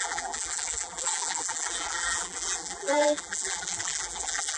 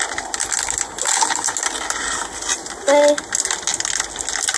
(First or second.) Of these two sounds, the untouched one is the second